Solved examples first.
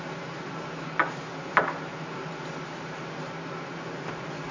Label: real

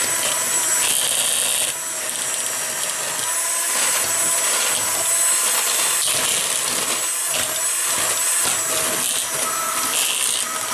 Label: real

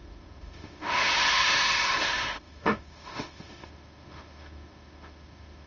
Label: fake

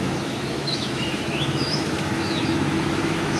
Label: fake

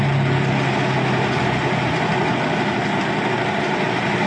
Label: real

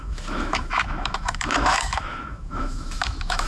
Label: fake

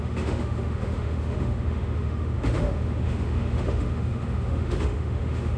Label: fake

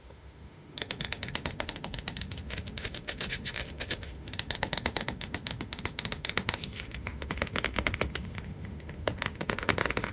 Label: fake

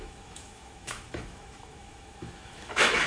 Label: fake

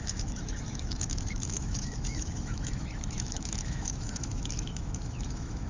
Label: fake